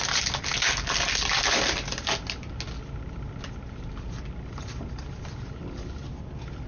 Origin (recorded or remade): recorded